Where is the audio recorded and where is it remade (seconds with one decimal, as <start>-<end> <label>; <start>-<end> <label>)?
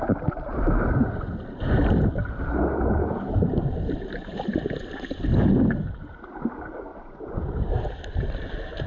0.0-8.9 recorded